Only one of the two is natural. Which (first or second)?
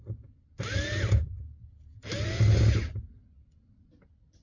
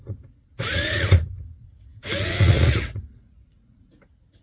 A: first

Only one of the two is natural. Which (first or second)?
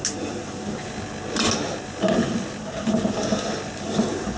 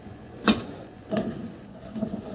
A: first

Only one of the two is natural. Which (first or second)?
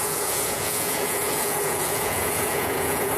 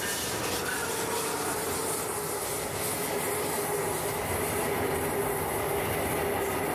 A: second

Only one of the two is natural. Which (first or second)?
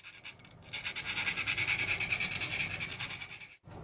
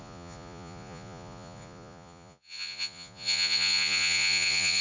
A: first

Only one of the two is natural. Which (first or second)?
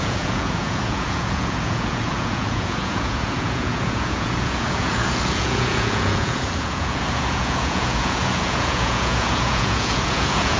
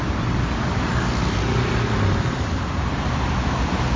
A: second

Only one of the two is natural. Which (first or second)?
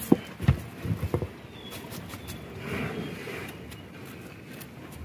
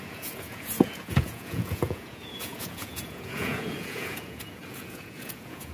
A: first